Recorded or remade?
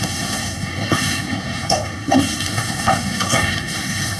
remade